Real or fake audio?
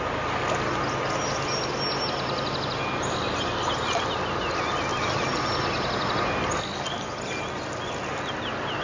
real